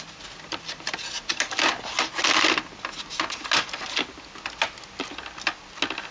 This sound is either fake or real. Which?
real